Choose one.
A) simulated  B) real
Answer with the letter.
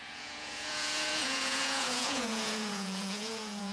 A